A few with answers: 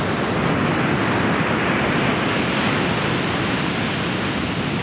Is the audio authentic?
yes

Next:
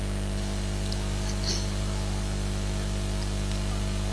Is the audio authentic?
yes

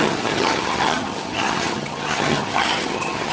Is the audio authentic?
no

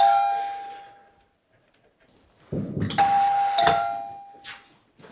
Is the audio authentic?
no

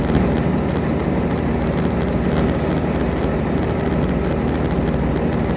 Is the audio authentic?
yes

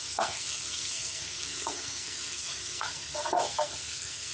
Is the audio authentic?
no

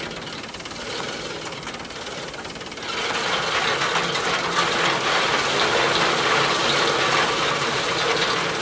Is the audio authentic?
yes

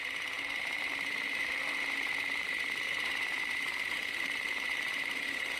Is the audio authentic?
no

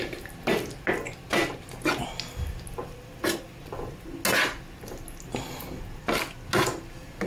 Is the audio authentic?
yes